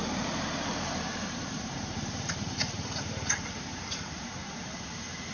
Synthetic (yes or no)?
yes